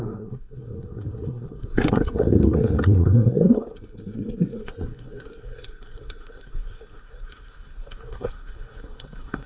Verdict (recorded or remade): remade